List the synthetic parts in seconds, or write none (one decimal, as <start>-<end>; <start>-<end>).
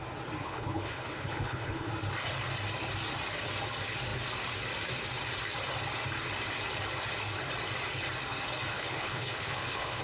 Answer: 0.4-1.9; 8.7-10.0